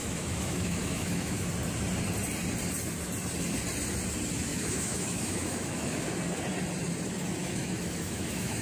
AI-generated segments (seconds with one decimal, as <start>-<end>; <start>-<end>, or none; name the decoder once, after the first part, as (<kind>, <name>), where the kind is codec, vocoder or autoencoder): 0.0-1.5 (autoencoder, DAC-VAE); 4.5-6.1; 7.4-8.6